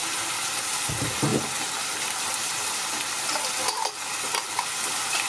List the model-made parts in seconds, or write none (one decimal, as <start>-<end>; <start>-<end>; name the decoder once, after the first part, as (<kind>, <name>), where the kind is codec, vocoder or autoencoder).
0.0-0.5 (vocoder, BigVGAN v2)